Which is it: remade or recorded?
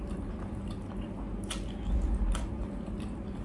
recorded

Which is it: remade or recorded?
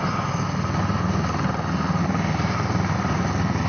recorded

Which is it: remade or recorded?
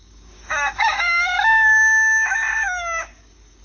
remade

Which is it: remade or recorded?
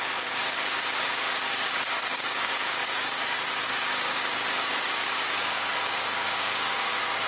remade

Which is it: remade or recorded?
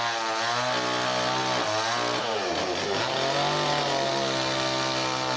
recorded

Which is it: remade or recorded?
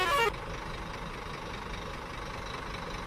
recorded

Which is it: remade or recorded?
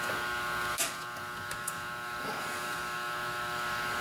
remade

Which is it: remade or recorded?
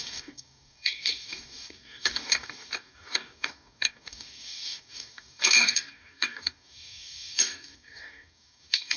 remade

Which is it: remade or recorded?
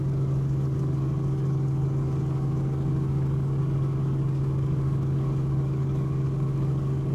remade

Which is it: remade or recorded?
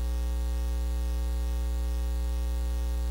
recorded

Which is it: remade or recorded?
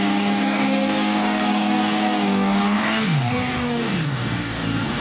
remade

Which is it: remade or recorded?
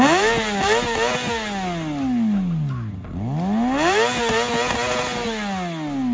recorded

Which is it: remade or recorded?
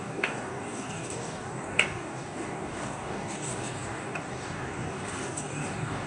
remade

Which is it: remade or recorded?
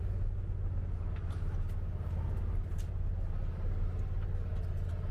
recorded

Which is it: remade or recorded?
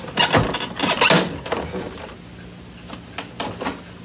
recorded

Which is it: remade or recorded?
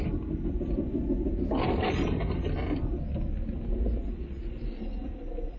recorded